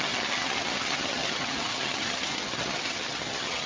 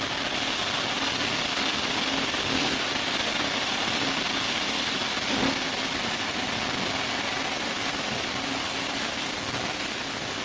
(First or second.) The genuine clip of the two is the second